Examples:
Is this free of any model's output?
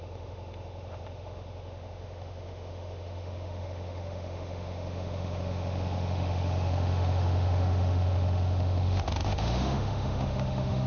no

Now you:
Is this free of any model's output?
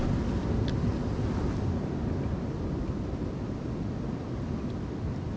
yes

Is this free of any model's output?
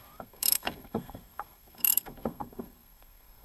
no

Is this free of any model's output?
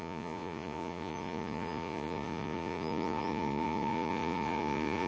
no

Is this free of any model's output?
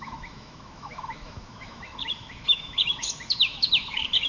no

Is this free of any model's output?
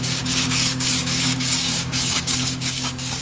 no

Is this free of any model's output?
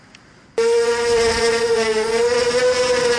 yes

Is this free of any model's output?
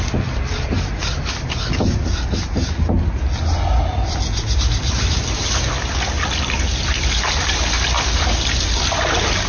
yes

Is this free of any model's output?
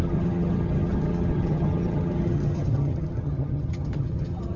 no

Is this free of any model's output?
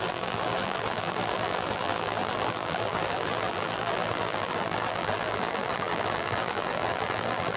no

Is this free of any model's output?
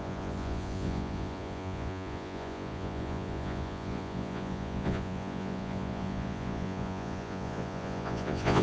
no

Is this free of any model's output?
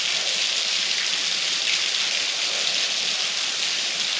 yes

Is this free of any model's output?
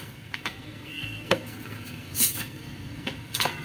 no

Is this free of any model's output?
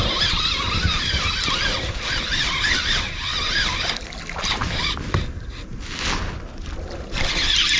yes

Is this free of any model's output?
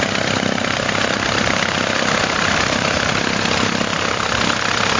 yes